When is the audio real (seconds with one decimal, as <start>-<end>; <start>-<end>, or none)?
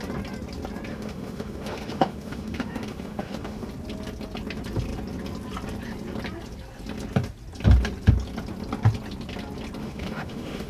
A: 0.0-0.9; 3.7-9.8